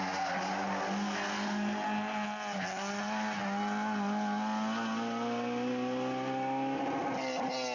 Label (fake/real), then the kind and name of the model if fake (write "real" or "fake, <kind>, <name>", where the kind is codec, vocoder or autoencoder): real